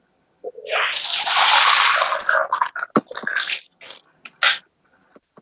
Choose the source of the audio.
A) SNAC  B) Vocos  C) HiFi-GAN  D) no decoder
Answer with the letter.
D